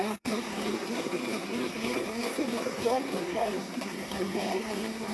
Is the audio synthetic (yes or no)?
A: yes